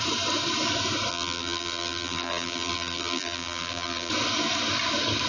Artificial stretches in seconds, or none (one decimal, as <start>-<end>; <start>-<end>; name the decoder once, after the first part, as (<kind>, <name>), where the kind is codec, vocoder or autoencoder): 1.1-4.1 (vocoder, BigVGAN v2)